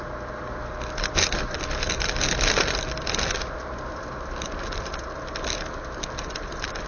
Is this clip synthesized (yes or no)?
no